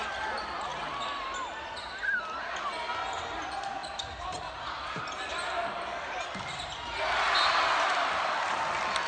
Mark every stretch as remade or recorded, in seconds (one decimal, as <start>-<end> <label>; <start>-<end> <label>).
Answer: 0.0-9.1 recorded